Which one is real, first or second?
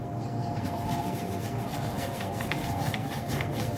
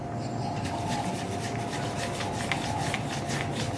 second